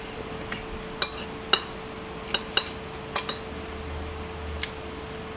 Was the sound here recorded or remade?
recorded